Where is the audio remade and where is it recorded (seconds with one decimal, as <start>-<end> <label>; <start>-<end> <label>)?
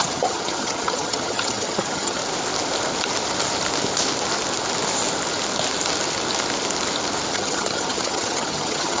0.0-2.2 remade; 2.2-7.3 recorded; 7.3-9.0 remade